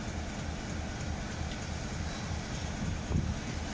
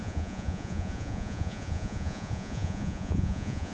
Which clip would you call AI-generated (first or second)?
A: second